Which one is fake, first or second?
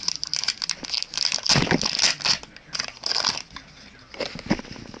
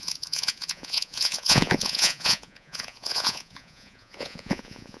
second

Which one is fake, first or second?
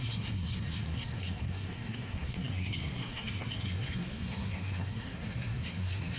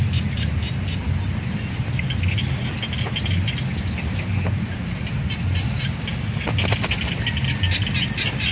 first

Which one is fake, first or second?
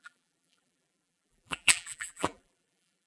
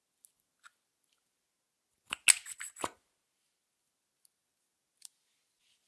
first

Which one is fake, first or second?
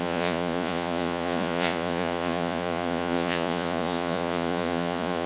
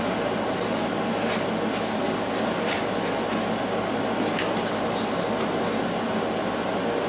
first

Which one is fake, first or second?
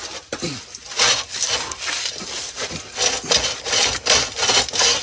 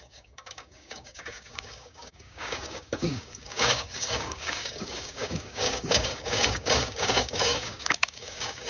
second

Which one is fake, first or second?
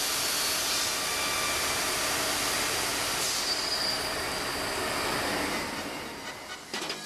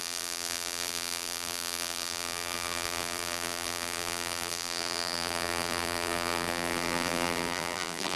second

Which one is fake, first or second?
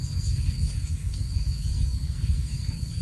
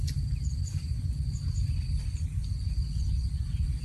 first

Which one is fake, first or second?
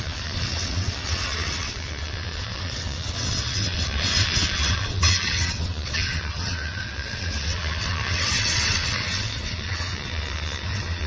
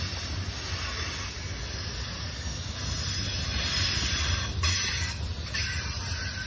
first